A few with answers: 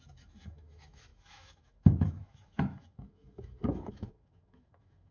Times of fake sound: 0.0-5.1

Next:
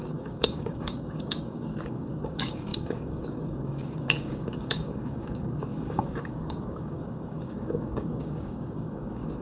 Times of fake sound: 0.0-9.4

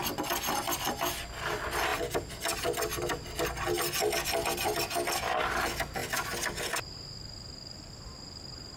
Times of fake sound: none

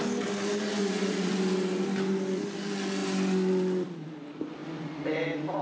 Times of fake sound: 0.8-1.3

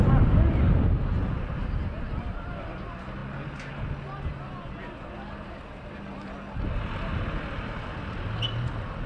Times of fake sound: none

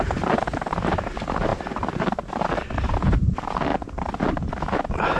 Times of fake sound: 0.0-3.7; 4.5-5.2

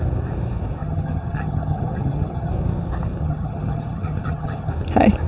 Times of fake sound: 0.8-2.5; 3.2-4.7